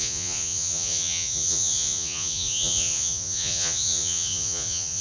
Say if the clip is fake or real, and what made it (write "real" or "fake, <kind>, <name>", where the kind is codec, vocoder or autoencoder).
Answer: fake, vocoder, Vocos